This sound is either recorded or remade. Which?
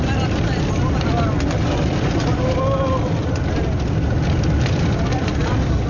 recorded